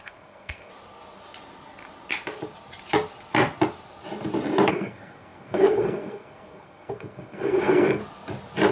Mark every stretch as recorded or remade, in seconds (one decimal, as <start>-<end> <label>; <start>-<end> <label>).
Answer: 0.0-0.7 remade; 0.7-4.7 recorded; 4.7-8.0 remade; 8.0-8.7 recorded